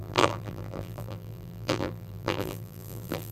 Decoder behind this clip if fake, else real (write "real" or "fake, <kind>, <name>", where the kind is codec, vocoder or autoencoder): fake, vocoder, BigVGAN v2